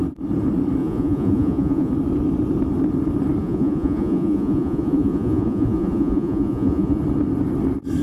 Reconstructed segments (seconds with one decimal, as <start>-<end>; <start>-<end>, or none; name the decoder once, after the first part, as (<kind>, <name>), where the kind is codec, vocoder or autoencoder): 0.8-1.9 (vocoder, Vocos); 3.4-7.0